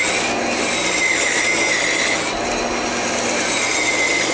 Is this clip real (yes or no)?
yes